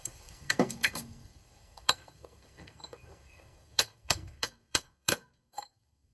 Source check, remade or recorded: remade